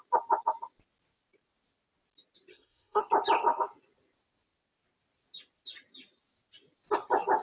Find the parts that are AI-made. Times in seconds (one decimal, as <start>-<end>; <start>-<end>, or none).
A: 2.5-3.0